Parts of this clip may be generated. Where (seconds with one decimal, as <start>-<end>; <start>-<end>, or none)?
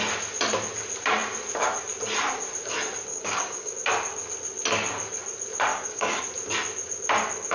3.1-3.7; 5.7-6.2